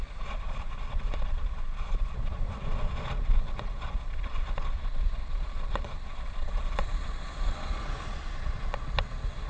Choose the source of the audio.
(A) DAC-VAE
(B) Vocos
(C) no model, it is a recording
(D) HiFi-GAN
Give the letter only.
B